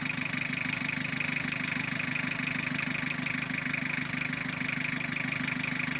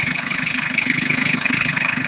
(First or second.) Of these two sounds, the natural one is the first